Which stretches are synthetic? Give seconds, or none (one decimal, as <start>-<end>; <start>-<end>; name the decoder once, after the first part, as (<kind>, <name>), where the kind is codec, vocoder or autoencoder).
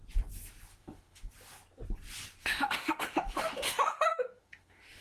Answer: 0.7-1.3 (autoencoder, DAC-VAE); 2.4-5.0